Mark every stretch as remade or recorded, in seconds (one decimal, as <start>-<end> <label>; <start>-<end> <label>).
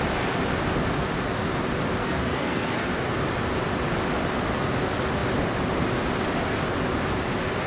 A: 0.0-2.0 recorded; 2.0-2.9 remade; 2.9-7.7 recorded